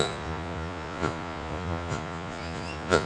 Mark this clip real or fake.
fake